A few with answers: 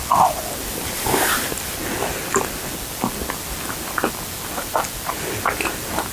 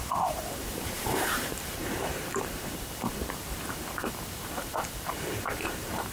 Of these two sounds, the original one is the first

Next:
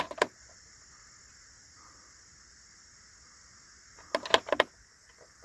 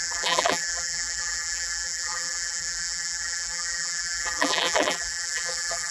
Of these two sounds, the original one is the first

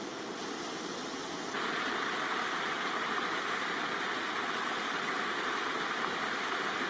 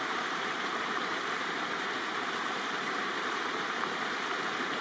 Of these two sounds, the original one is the first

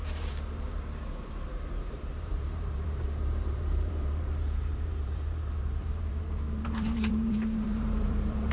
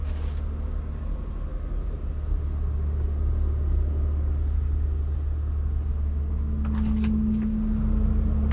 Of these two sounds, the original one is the second